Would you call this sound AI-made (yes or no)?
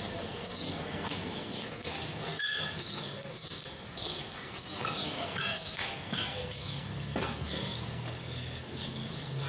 yes